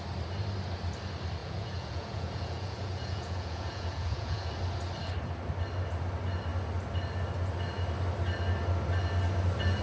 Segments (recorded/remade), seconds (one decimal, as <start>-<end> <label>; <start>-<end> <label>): 0.0-1.4 recorded; 1.4-4.5 remade; 4.5-9.8 recorded